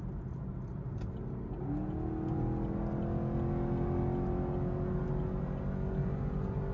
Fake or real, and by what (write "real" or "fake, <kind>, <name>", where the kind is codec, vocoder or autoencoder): real